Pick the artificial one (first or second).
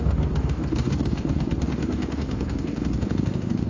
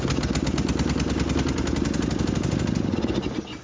first